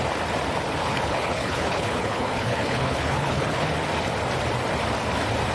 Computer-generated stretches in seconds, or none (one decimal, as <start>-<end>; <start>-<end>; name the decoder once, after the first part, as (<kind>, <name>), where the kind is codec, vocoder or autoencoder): 0.8-3.7 (codec, HILCodec)

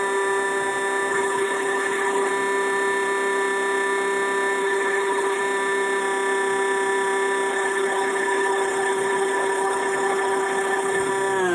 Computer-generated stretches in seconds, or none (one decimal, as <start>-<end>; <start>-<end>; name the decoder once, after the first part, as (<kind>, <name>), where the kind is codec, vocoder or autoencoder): 1.1-2.3 (codec, HILCodec); 4.6-5.4; 7.5-11.1

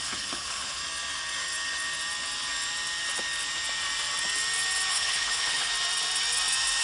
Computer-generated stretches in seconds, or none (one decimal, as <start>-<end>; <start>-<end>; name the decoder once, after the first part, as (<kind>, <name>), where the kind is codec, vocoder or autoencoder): 0.0-0.8 (codec, HILCodec); 4.9-5.7

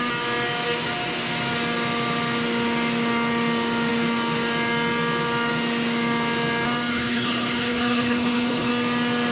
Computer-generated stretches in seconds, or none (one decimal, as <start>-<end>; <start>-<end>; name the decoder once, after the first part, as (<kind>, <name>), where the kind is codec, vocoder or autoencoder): 6.9-8.7 (codec, HILCodec)

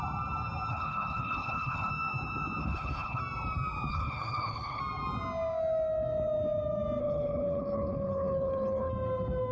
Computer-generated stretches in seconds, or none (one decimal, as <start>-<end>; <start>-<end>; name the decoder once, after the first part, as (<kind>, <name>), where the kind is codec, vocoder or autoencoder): 0.7-1.9 (codec, HILCodec); 2.6-3.2; 3.9-4.8; 7.0-8.9

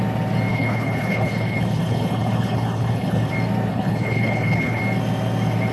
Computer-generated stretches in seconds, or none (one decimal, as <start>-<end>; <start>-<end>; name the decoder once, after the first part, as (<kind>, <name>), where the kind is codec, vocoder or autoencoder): 0.5-3.3 (codec, HILCodec); 3.7-4.8

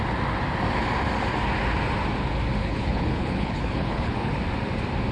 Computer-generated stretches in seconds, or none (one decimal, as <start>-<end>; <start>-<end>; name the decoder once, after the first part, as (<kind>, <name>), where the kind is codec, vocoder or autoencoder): 2.6-4.3 (codec, HILCodec)